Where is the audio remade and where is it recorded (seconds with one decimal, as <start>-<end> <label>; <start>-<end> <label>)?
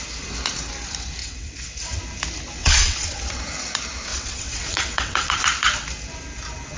0.0-1.2 recorded; 1.2-2.0 remade; 2.0-2.6 recorded; 2.6-3.4 remade; 3.4-4.1 recorded; 4.1-5.4 remade; 5.4-6.8 recorded